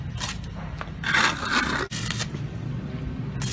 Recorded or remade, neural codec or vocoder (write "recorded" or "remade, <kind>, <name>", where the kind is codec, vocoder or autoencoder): recorded